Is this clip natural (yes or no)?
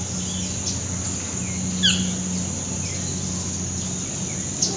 yes